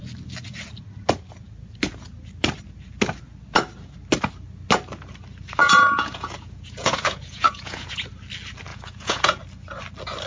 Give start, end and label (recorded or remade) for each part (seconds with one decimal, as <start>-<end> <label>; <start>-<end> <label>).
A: 0.0-5.6 recorded; 5.6-8.1 remade; 8.1-8.7 recorded; 8.7-9.4 remade; 9.4-10.3 recorded